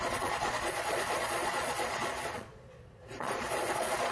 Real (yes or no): no